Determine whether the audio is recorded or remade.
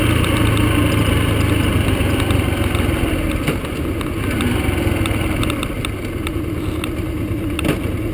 recorded